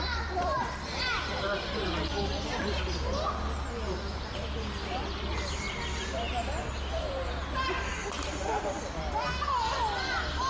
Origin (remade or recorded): recorded